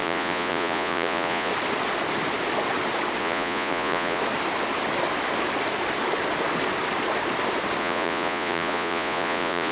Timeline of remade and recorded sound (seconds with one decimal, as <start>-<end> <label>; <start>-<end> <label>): 0.0-1.5 remade; 1.5-3.2 recorded; 3.2-4.2 remade; 4.2-7.8 recorded; 7.8-9.7 remade

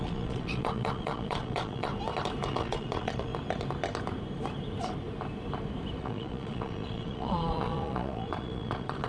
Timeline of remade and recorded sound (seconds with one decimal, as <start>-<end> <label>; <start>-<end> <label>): 0.0-1.9 remade; 1.9-2.5 recorded; 2.5-3.3 remade; 3.3-6.0 recorded; 6.0-9.1 remade

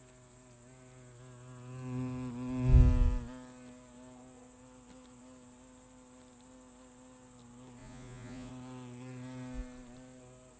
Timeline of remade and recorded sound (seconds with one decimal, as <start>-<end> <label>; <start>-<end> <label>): 0.0-7.8 recorded; 7.8-8.5 remade; 8.5-10.6 recorded

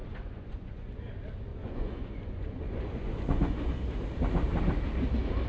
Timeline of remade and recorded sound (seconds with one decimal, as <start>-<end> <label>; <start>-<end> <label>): 0.0-1.0 remade; 1.0-1.5 recorded; 1.5-3.7 remade; 3.7-5.5 recorded

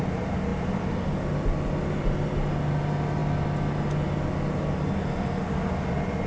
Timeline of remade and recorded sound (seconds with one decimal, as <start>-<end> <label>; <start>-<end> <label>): 0.0-6.3 recorded

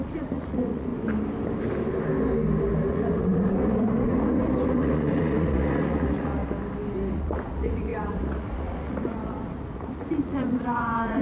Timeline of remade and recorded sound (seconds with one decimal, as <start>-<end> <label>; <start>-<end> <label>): 0.0-0.9 remade; 0.9-2.9 recorded; 2.9-6.4 remade; 6.4-7.1 recorded; 7.1-11.2 remade

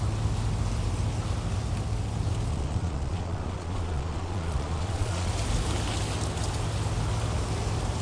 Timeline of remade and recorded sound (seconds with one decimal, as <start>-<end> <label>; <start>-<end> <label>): 0.0-2.5 recorded; 2.5-5.3 remade; 5.3-8.0 recorded